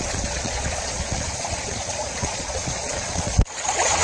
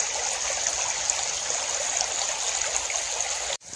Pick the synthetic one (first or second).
first